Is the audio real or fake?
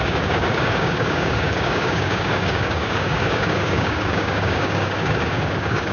fake